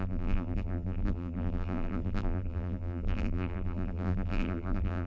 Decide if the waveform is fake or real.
fake